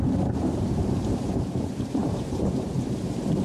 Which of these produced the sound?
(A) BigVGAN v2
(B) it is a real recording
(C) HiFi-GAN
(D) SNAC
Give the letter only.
A